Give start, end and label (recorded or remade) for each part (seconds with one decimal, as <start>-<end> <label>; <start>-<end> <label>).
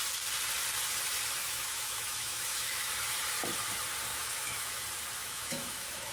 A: 0.0-1.4 recorded; 1.4-2.9 remade; 2.9-4.1 recorded; 4.1-4.8 remade; 4.8-5.2 recorded; 5.2-6.1 remade